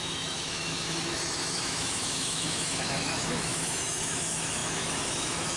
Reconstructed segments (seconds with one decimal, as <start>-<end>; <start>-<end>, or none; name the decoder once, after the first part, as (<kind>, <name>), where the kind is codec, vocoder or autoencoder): 0.0-5.6 (autoencoder, DAC-VAE)